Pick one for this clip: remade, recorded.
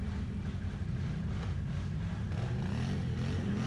recorded